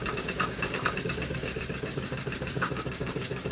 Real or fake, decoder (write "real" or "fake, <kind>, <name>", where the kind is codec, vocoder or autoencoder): fake, codec, DAC